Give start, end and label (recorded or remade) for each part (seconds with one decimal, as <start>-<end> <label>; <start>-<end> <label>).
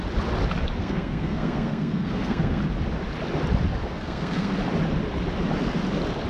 0.0-0.8 recorded; 0.8-2.6 remade; 2.6-3.8 recorded; 3.8-4.5 remade; 4.5-6.3 recorded